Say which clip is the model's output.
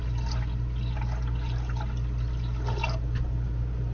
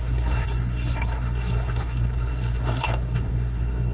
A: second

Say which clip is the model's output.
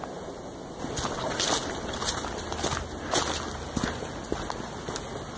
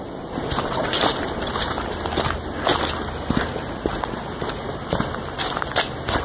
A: second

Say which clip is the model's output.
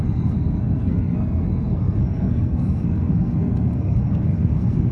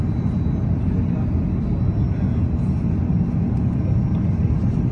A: first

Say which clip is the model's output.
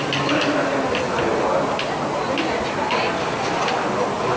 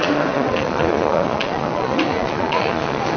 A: second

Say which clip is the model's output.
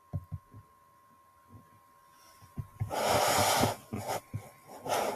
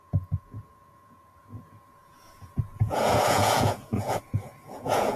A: second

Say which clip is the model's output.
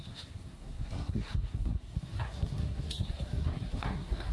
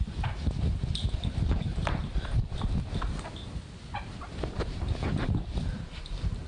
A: first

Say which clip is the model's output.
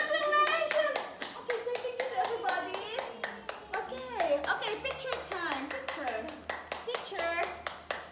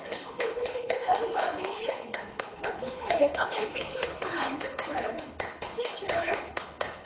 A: second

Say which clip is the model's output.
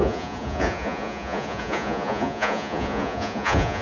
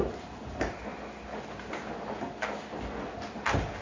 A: first